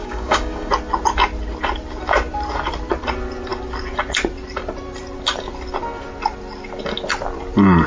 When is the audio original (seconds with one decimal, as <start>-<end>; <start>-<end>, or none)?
0.7-7.9